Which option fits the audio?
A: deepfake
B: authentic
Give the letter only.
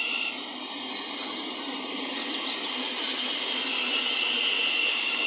B